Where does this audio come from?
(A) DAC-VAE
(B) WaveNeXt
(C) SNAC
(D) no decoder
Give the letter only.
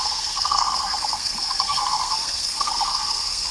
C